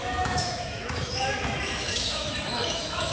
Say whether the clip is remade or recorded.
remade